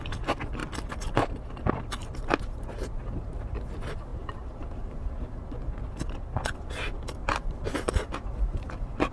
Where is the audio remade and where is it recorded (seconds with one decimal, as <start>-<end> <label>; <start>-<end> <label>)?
0.0-7.2 recorded; 7.2-7.9 remade; 7.9-9.1 recorded